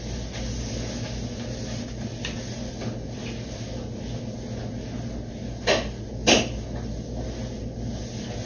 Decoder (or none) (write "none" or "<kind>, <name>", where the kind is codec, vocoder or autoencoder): none